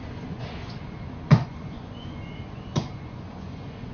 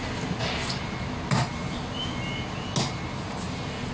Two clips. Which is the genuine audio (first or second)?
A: second